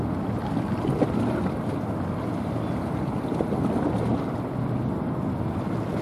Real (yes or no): yes